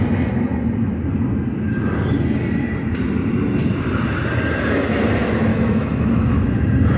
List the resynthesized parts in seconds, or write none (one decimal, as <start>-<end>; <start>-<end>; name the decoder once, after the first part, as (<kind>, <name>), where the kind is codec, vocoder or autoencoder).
5.5-6.3 (autoencoder, DAC-VAE)